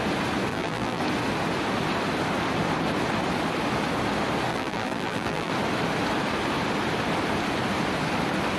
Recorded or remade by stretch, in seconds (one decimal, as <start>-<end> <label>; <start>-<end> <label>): 0.0-0.5 recorded; 0.5-1.0 remade; 1.0-4.5 recorded; 4.5-5.5 remade; 5.5-8.6 recorded